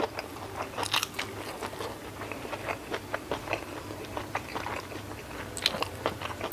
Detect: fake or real real